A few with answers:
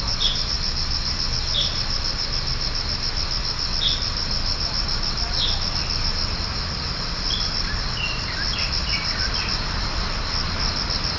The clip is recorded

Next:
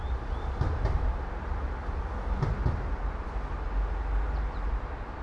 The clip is recorded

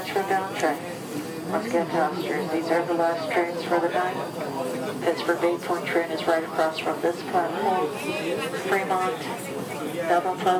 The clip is recorded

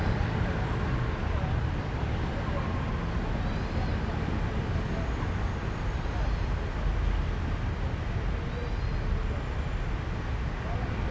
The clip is recorded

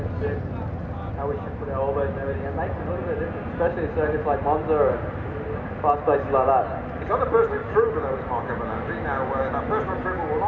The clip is recorded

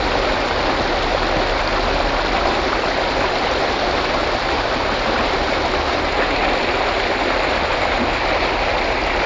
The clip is recorded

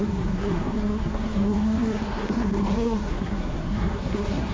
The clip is remade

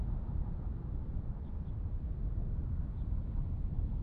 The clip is recorded